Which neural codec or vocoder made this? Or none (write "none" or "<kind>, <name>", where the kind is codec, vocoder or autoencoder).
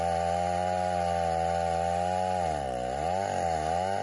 none